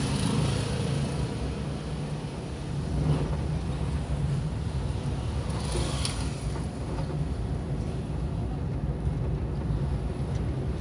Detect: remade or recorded recorded